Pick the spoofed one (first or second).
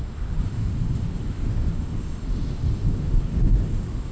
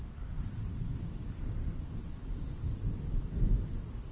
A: first